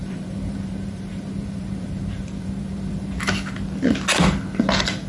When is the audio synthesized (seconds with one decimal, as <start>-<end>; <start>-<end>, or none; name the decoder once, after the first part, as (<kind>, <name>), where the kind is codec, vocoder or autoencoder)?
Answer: 0.0-3.1 (vocoder, BigVGAN v2)